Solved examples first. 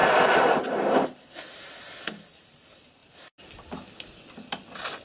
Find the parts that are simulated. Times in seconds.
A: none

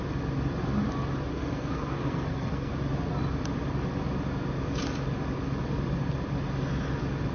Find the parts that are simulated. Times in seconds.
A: 1.3-2.7 (codec, SNAC)

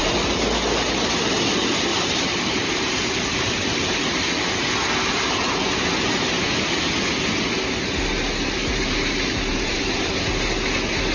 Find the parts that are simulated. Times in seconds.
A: 1.9-4.5 (vocoder, BigVGAN v2); 8.6-10.1

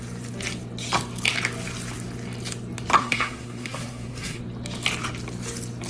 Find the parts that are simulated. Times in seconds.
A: 3.0-4.4 (codec, SNAC)

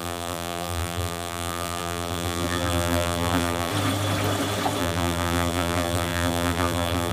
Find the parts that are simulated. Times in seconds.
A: 0.0-3.7 (vocoder, BigVGAN v2); 4.8-7.1